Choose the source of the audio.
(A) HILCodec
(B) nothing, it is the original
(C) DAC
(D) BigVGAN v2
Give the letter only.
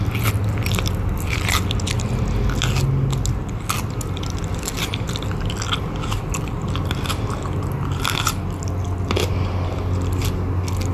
B